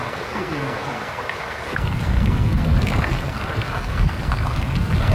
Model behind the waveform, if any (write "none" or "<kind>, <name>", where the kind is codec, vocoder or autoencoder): codec, SNAC